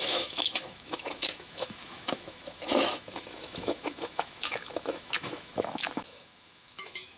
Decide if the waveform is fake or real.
fake